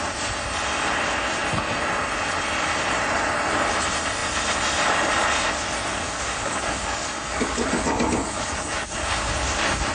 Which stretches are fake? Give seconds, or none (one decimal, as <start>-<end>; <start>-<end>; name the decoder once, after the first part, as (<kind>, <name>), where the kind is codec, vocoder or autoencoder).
5.9-9.3 (codec, DAC)